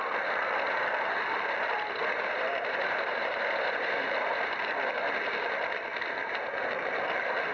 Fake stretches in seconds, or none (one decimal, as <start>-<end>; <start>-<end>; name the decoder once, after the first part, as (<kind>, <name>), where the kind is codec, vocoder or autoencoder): 2.0-4.7 (vocoder, BigVGAN v2); 6.2-6.7